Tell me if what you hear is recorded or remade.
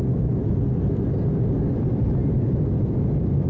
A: recorded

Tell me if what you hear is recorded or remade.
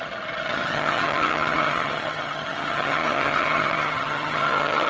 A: remade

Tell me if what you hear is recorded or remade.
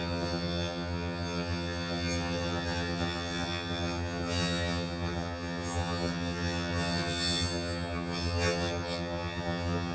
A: remade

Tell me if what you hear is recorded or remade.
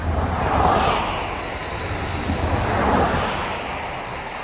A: recorded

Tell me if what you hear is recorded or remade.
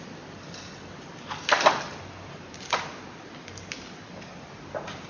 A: recorded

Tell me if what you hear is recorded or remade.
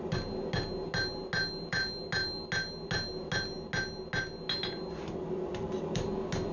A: recorded